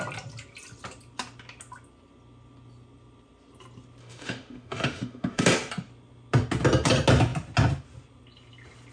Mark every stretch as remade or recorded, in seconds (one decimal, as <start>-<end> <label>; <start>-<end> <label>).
0.0-4.0 recorded; 4.0-5.4 remade; 5.4-8.9 recorded

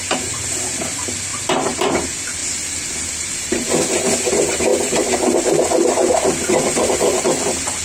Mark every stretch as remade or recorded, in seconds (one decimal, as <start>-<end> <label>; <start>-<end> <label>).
0.0-1.3 recorded; 1.3-1.9 remade; 1.9-7.8 recorded

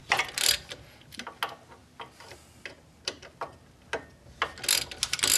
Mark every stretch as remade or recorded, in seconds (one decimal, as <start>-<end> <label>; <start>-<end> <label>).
0.0-5.4 recorded

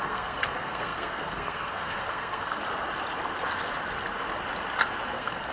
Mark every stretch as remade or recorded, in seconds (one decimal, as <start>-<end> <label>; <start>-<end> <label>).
0.0-2.6 remade; 2.6-5.1 recorded; 5.1-5.5 remade